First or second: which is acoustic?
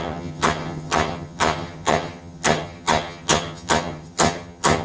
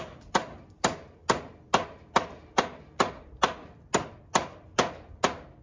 second